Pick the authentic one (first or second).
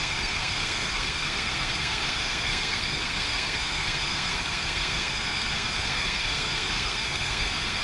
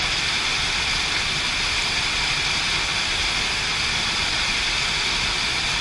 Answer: second